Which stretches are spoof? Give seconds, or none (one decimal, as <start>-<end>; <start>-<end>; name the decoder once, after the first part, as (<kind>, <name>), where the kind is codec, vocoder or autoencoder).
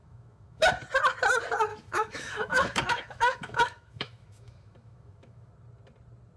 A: 0.0-0.7 (autoencoder, DAC-VAE); 1.7-5.5